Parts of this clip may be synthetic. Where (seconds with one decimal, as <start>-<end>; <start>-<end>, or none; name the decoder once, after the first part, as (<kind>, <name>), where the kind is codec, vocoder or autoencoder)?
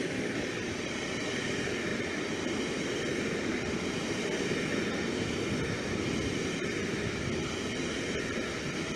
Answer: 0.0-9.0 (vocoder, BigVGAN v2)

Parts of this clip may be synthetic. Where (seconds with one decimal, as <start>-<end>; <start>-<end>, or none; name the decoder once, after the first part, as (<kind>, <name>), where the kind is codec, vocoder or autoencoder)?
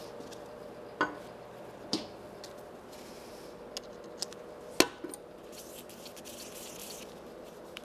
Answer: 6.8-7.8 (vocoder, BigVGAN v2)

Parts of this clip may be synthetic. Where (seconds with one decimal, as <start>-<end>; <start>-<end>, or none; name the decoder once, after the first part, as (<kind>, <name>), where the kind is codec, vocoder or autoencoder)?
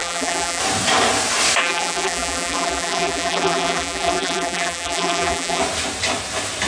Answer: 0.0-0.6 (vocoder, BigVGAN v2); 1.6-5.6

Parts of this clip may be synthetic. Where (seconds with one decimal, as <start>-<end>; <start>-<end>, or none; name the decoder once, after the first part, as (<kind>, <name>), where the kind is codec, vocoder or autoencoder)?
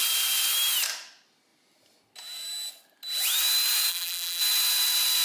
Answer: 3.9-4.4 (vocoder, BigVGAN v2)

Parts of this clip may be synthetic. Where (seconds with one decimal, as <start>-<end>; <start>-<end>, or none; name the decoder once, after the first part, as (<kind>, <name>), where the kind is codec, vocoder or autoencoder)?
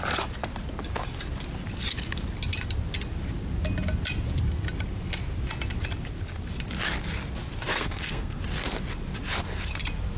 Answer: 7.7-8.4 (codec, SNAC)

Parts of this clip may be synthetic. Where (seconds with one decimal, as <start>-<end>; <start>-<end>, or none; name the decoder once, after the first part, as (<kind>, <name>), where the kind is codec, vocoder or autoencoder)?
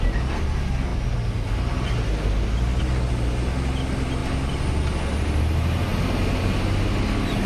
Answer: none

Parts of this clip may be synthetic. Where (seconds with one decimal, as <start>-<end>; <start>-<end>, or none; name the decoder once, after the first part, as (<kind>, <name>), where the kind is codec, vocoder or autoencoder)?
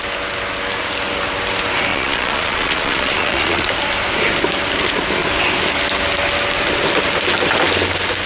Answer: 1.9-3.7 (vocoder, Vocos)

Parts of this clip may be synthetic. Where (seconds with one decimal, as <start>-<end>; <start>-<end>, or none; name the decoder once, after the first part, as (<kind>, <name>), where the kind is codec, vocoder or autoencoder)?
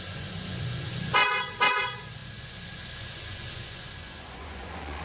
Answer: 0.0-5.0 (vocoder, Vocos)